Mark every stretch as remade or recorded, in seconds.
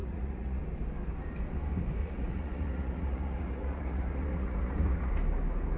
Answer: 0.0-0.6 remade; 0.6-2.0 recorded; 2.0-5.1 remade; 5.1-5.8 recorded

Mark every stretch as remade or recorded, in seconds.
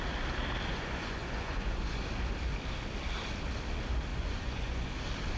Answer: 0.0-0.7 recorded; 0.7-2.0 remade; 2.0-4.1 recorded; 4.1-4.9 remade; 4.9-5.4 recorded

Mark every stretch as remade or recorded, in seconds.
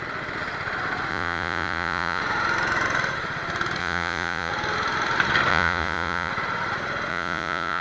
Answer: 0.0-1.1 recorded; 1.1-2.2 remade; 2.2-3.8 recorded; 3.8-4.5 remade; 4.5-5.5 recorded; 5.5-6.3 remade; 6.3-7.1 recorded; 7.1-7.8 remade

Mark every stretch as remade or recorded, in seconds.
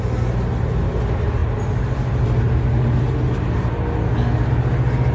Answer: 0.0-5.1 recorded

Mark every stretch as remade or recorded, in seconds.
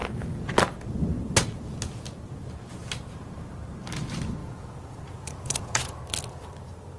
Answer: 0.0-4.4 recorded; 4.4-6.0 remade; 6.0-7.0 recorded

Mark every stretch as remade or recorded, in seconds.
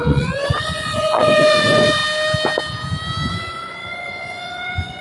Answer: 0.0-2.0 remade; 2.0-3.3 recorded; 3.3-5.0 remade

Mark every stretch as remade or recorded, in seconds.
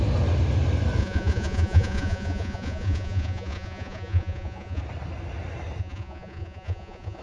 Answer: 0.0-1.0 recorded; 1.0-4.8 remade; 4.8-5.8 recorded; 5.8-7.2 remade